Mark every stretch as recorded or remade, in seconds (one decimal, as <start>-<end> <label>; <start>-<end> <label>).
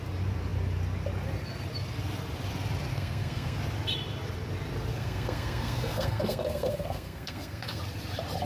0.0-2.9 recorded; 2.9-3.6 remade; 3.6-4.9 recorded; 4.9-7.8 remade; 7.8-8.5 recorded